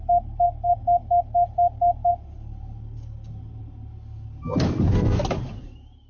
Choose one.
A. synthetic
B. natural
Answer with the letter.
B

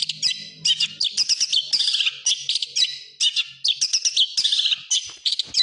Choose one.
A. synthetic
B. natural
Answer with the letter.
B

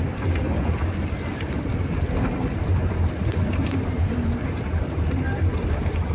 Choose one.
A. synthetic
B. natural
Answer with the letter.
A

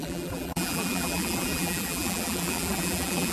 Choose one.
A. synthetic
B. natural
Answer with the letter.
A